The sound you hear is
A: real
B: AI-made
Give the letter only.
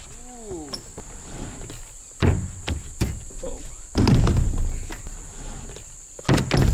A